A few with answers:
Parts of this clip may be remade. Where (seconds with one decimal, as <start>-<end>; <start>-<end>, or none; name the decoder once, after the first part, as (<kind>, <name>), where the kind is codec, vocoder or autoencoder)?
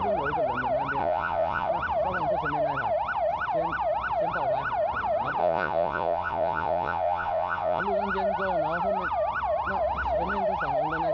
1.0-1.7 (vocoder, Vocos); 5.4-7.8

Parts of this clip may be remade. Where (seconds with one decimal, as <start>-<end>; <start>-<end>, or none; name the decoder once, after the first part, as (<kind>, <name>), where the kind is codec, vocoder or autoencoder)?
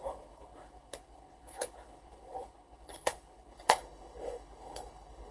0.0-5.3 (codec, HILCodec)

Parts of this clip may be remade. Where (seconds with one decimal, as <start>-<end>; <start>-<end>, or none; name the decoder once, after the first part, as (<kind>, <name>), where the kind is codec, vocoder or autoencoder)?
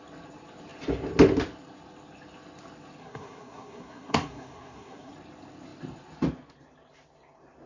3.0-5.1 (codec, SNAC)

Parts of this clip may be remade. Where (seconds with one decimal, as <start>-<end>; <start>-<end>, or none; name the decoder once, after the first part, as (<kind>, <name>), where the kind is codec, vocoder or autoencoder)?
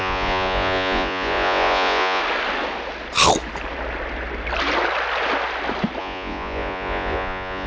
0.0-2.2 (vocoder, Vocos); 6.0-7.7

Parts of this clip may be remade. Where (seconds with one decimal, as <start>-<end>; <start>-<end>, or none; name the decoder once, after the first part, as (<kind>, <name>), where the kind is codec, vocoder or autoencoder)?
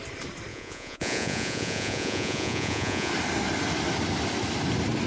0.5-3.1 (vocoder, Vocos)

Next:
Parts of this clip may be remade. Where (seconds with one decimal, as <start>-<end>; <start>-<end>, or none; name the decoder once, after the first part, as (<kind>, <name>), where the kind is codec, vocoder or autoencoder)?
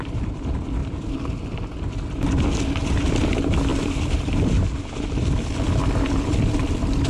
3.7-4.6 (vocoder, BigVGAN v2)